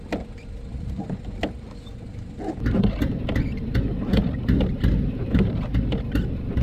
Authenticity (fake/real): real